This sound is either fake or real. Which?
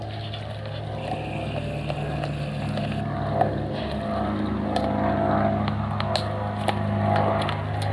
real